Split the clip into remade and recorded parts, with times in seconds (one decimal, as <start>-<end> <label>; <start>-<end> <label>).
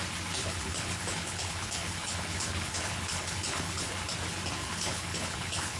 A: 0.0-0.4 recorded; 0.4-3.9 remade; 3.9-4.6 recorded; 4.6-5.8 remade